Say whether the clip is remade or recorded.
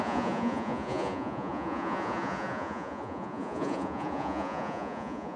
remade